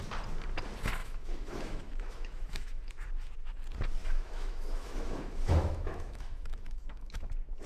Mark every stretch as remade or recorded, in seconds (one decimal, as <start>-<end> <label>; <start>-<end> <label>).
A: 0.0-1.0 recorded; 1.0-2.9 remade; 2.9-4.0 recorded; 4.0-7.3 remade; 7.3-7.7 recorded